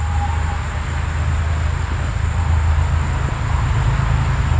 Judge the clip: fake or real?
real